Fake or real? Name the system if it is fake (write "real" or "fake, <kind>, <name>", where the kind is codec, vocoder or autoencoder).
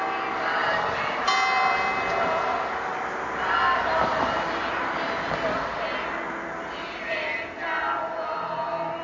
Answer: real